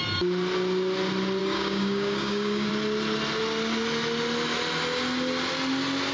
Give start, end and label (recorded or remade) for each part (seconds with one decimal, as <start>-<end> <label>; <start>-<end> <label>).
0.0-1.4 recorded; 1.4-2.7 remade; 2.7-6.1 recorded